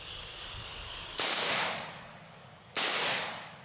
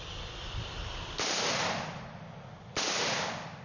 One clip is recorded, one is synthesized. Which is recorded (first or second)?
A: second